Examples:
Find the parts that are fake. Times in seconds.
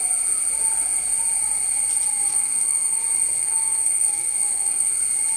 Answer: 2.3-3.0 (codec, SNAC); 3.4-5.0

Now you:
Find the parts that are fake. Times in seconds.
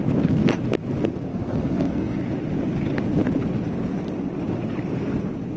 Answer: 1.3-2.2 (codec, SNAC)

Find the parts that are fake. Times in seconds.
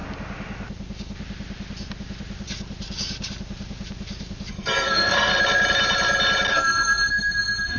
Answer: 4.5-5.3 (codec, SNAC); 6.5-7.8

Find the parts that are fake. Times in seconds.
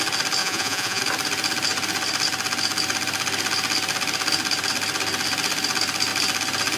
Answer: 0.4-1.0 (vocoder, Vocos)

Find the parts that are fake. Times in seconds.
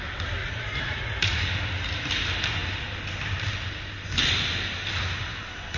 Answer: 0.4-1.5 (vocoder, Vocos)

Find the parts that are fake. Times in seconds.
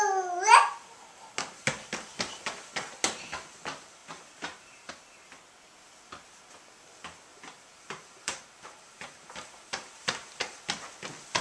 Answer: 4.0-4.9 (vocoder, BigVGAN v2); 7.3-10.6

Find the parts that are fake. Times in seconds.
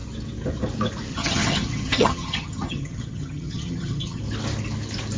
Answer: 1.1-4.2 (vocoder, HiFi-GAN)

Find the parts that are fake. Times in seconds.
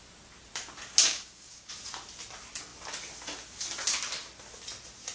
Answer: 1.1-1.7 (codec, DAC)